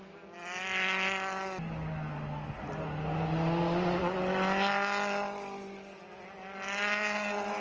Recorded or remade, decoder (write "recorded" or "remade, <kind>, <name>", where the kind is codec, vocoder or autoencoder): recorded